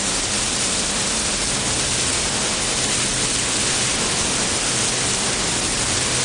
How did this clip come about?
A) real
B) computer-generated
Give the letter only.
A